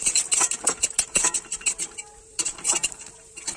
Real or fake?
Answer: fake